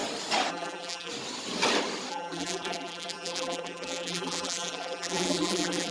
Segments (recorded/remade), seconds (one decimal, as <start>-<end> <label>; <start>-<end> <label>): 0.0-0.5 recorded; 0.5-1.1 remade; 1.1-2.1 recorded; 2.1-5.9 remade

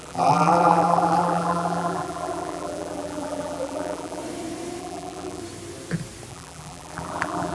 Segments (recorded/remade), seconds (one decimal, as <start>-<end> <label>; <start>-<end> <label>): 0.0-4.2 remade; 4.2-4.8 recorded; 4.8-5.4 remade; 5.4-6.3 recorded; 6.3-7.5 remade

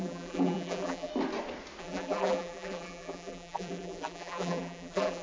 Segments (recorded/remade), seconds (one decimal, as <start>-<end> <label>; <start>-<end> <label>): 0.0-1.1 remade; 1.1-1.8 recorded; 1.8-5.2 remade